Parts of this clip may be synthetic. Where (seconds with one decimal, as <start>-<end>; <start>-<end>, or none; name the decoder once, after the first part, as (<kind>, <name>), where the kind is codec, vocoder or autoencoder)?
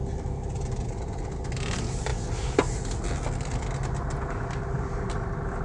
none